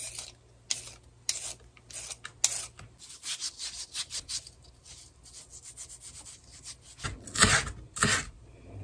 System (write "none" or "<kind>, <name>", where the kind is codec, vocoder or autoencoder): none